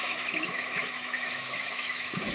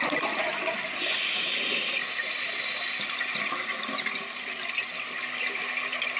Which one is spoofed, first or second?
first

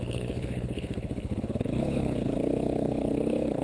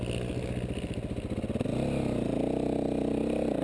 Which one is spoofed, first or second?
first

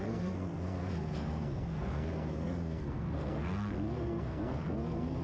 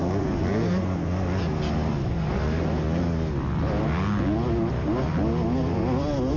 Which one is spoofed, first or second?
first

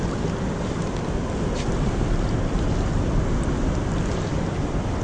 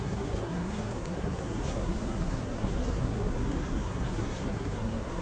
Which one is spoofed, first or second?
second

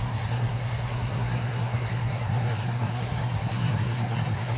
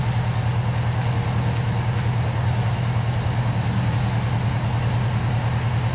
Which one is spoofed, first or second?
first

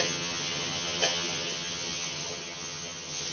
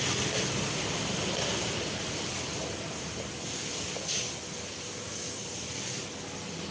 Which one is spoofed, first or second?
first